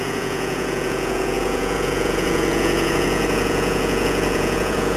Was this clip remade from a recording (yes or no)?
yes